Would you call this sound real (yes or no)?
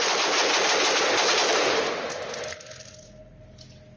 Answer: yes